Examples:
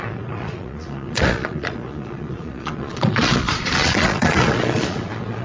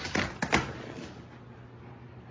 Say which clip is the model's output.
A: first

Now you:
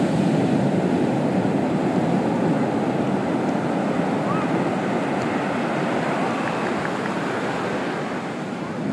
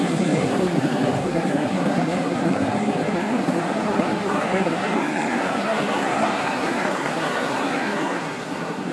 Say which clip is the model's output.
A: second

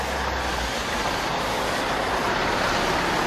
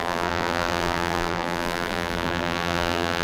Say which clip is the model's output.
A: second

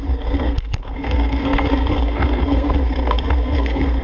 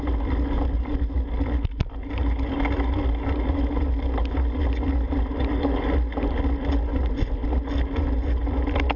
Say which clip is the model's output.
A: first